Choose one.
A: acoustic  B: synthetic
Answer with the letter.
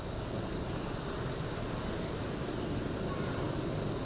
A